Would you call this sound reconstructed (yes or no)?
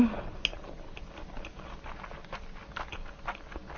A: no